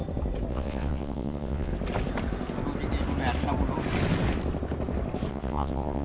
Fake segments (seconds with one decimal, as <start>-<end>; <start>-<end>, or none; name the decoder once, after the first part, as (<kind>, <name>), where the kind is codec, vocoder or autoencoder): 0.5-1.7 (vocoder, WaveNeXt); 5.3-6.0